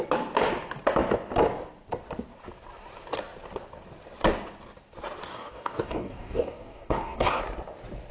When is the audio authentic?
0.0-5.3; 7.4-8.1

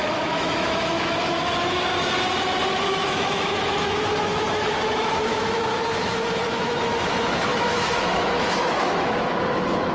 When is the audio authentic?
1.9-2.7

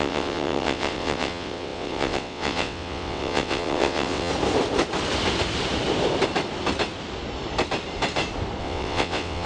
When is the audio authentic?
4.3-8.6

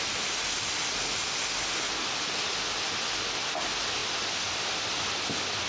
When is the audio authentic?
0.0-5.7

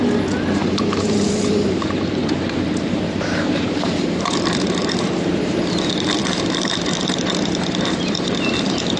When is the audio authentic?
0.0-0.6; 5.8-6.2

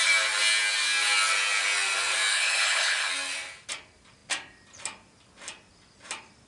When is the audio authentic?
0.0-2.3; 3.1-6.5